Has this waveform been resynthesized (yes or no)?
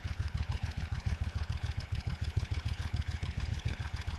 yes